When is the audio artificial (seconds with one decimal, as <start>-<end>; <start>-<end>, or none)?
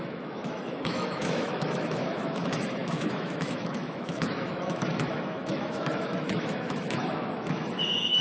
0.0-8.2